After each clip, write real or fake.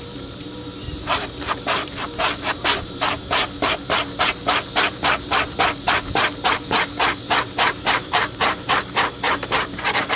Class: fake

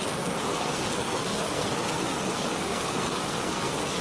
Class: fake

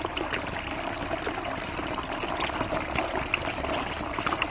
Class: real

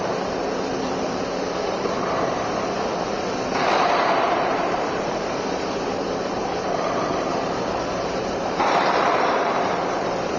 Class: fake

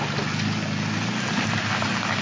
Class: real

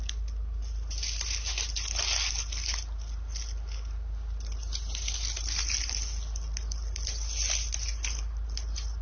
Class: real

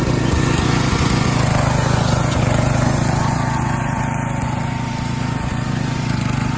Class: fake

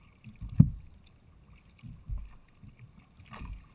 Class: real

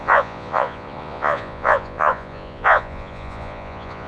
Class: fake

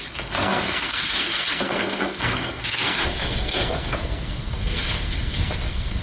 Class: fake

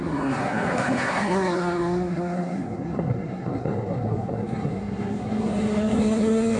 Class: fake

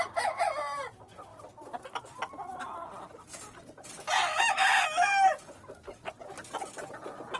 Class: real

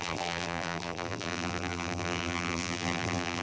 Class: fake